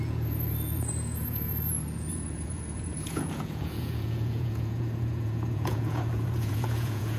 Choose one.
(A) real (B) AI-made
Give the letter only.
B